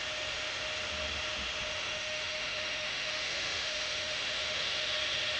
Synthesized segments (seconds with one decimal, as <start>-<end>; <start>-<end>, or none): 1.7-4.9